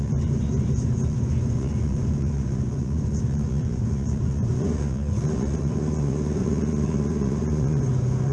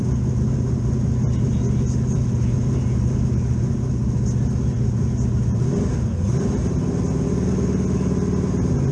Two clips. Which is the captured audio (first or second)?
second